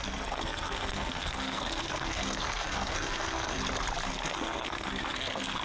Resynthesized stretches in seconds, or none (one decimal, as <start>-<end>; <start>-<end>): 0.0-3.6; 4.1-5.6